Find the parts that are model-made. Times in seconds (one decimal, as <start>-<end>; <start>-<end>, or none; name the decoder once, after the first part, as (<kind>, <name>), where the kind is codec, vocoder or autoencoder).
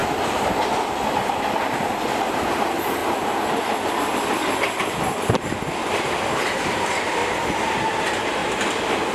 0.0-7.2 (vocoder, BigVGAN v2); 8.0-9.1